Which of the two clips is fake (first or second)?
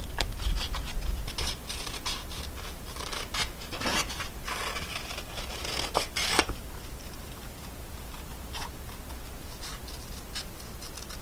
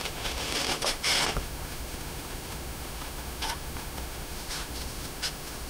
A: second